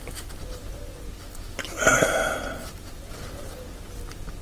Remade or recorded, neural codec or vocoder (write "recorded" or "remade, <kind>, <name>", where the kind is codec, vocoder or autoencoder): recorded